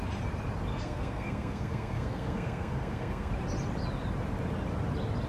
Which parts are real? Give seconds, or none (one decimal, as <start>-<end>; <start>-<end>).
0.0-0.7; 3.3-5.3